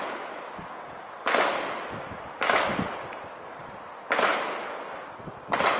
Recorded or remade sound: recorded